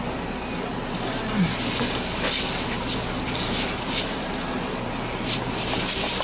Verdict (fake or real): real